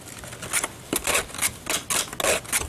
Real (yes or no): yes